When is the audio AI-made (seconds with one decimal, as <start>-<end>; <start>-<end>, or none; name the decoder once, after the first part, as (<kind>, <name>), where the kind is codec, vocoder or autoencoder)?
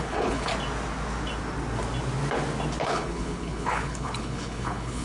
0.0-0.5 (codec, HILCodec); 2.8-5.0